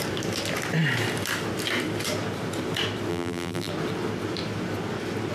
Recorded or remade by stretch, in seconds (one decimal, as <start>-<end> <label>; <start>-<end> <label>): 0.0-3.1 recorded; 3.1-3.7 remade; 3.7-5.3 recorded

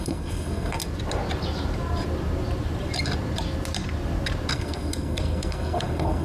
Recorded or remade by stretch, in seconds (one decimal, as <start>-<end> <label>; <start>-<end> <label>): 0.0-0.8 remade; 0.8-4.5 recorded; 4.5-6.2 remade

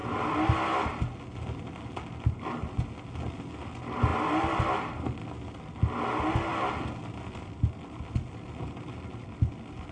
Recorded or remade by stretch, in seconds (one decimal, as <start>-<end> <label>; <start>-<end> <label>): 0.0-9.9 recorded

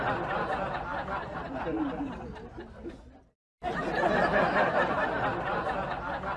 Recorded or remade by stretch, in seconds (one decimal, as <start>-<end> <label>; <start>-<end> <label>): 0.0-6.4 recorded

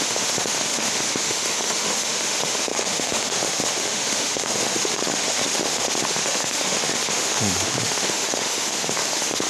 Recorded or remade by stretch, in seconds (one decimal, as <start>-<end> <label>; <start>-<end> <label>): 0.0-9.5 remade

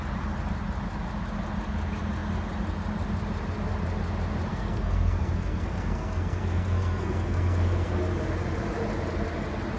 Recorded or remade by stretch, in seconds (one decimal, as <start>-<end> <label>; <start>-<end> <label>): 0.0-4.5 recorded; 4.5-8.0 remade; 8.0-9.8 recorded